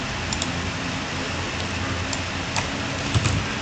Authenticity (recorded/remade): recorded